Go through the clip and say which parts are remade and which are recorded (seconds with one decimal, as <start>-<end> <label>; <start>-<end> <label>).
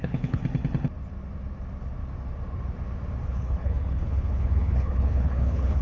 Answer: 0.0-0.4 remade; 0.4-3.3 recorded; 3.3-5.8 remade